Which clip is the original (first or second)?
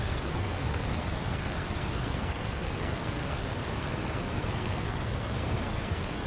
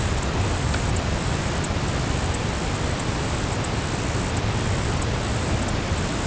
second